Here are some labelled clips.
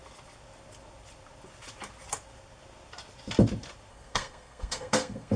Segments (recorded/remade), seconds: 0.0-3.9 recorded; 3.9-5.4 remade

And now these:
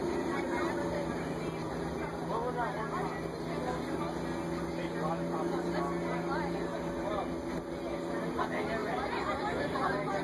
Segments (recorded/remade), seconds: 0.0-2.3 remade; 2.3-10.2 recorded